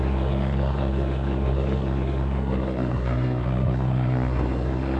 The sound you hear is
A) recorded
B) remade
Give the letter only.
B